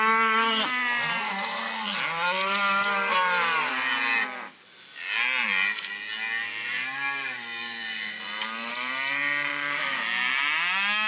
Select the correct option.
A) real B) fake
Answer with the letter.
A